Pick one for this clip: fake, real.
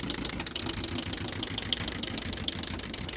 real